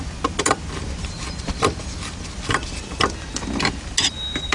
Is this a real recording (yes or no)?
yes